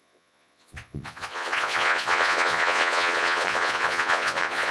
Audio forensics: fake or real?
fake